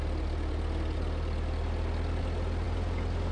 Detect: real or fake real